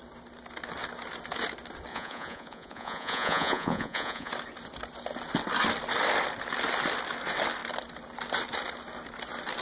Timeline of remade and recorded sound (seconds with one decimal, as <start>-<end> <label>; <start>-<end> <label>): 0.0-1.9 recorded; 1.9-4.3 remade; 4.3-9.6 recorded